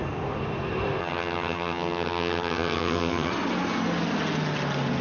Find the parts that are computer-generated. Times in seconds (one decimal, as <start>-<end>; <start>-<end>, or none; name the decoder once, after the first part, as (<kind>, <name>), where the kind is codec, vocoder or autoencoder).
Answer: 1.0-3.3 (vocoder, HiFi-GAN)